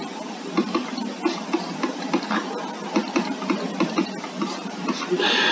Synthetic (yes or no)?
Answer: yes